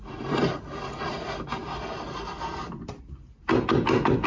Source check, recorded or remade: remade